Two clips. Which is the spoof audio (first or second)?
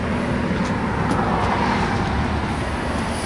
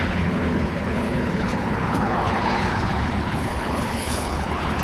second